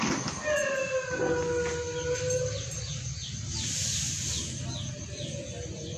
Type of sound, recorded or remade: recorded